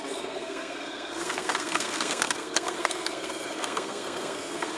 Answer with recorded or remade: remade